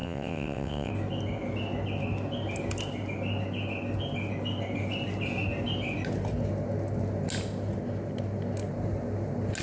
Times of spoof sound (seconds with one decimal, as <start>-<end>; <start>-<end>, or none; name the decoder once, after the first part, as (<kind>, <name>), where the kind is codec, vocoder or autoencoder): 0.0-0.9 (vocoder, WaveNeXt)